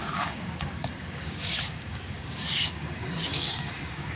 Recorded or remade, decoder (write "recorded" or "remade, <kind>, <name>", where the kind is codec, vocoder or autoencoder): remade, codec, DAC